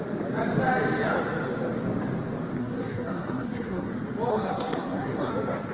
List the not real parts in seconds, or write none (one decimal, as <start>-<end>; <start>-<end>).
2.6-3.9; 4.3-5.3